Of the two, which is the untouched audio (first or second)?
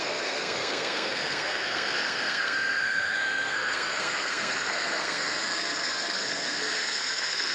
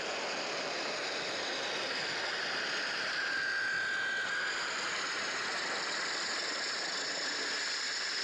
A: second